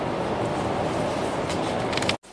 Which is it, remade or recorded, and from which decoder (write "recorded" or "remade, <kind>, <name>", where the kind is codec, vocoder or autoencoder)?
recorded